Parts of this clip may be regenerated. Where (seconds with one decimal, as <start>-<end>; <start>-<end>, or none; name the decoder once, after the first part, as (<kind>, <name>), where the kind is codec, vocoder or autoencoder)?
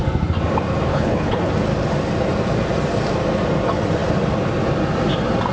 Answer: 0.9-1.5 (codec, HILCodec)